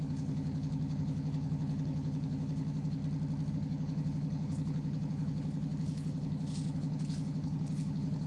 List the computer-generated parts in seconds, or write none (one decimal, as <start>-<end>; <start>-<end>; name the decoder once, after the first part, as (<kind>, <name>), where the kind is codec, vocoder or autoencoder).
0.0-3.0 (codec, HILCodec); 3.5-8.3